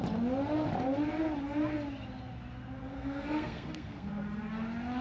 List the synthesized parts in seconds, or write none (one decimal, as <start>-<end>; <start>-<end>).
2.9-4.1